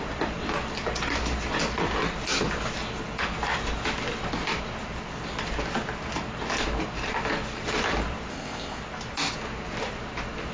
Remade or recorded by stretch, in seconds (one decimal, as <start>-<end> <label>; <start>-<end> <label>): 0.0-8.3 recorded; 8.3-8.8 remade; 8.8-10.5 recorded